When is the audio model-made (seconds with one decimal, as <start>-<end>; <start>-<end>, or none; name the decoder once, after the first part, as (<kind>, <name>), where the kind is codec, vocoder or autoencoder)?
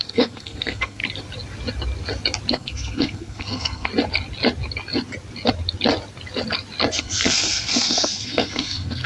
0.0-1.0 (codec, SNAC); 2.5-3.9; 7.0-9.1